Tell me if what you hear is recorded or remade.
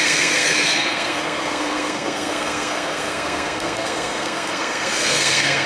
remade